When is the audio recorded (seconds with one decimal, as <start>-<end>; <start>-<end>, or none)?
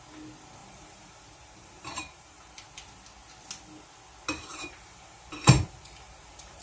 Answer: 0.0-0.6; 2.5-4.5